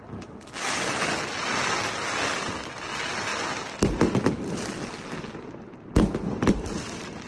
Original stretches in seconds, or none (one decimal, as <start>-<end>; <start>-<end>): 0.0-7.3